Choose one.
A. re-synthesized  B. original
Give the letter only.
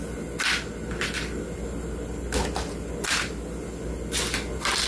B